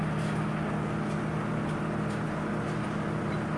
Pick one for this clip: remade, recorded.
recorded